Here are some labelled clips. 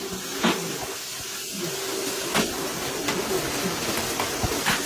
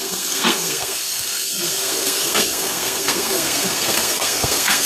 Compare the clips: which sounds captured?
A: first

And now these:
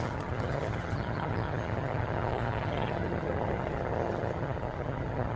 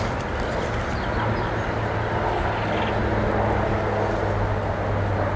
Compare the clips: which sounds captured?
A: second